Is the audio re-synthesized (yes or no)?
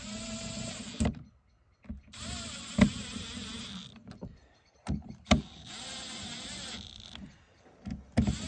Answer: no